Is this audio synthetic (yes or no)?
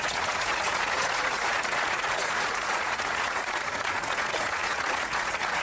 yes